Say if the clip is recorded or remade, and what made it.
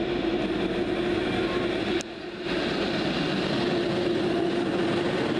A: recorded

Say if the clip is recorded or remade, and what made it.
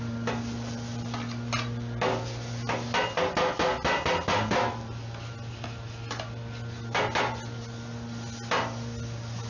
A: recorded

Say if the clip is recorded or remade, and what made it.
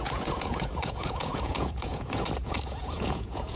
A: remade, vocoder, Vocos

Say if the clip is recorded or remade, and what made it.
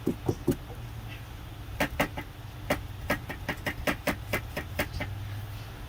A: recorded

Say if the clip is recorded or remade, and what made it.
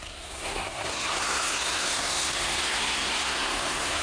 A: remade, codec, SNAC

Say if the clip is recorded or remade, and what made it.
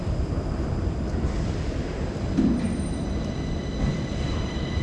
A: remade, vocoder, BigVGAN v2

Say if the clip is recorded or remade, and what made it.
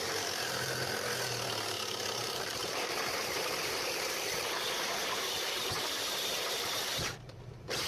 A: remade, vocoder, BigVGAN v2